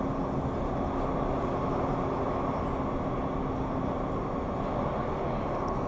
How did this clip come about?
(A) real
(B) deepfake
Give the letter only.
A